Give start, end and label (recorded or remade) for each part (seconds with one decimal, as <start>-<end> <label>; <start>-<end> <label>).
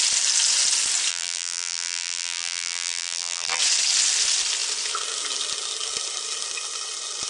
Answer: 0.0-1.1 recorded; 1.1-3.6 remade; 3.6-7.3 recorded